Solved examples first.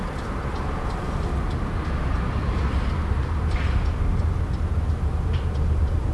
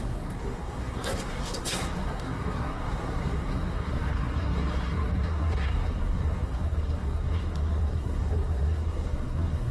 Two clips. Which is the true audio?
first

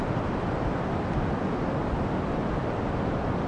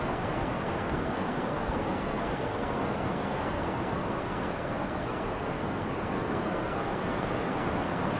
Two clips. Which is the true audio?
first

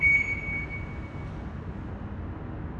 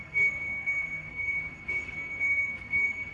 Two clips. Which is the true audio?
first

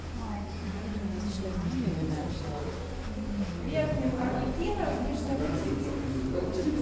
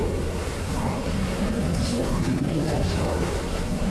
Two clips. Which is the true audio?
first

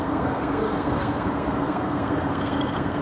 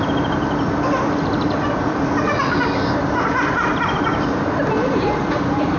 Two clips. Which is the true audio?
second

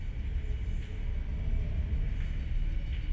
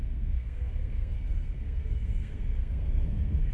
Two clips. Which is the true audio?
first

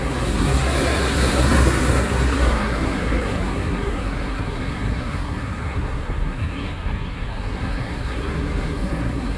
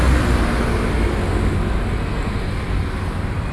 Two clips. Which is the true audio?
second